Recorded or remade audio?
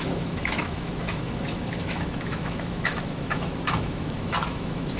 remade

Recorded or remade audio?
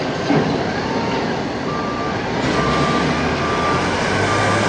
recorded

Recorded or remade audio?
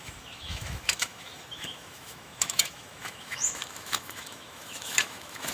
remade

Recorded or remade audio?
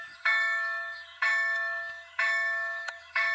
remade